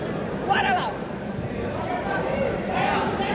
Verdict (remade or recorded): remade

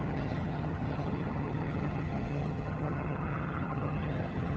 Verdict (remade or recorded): remade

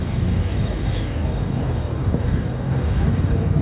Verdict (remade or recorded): remade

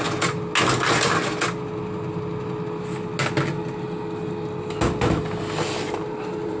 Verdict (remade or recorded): recorded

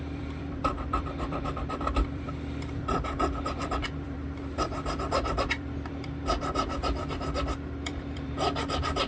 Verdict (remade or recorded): remade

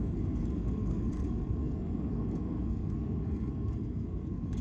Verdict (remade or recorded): remade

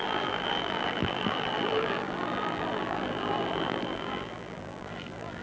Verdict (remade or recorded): remade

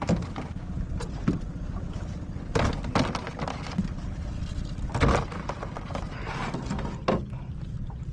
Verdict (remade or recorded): recorded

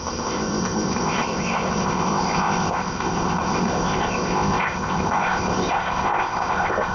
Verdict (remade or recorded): remade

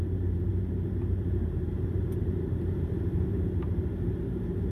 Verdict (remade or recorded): remade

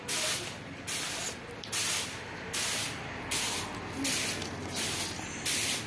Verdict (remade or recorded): recorded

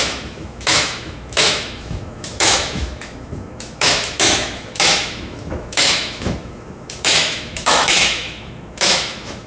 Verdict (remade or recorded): remade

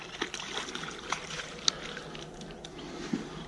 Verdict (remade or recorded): recorded